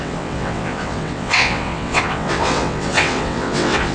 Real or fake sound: fake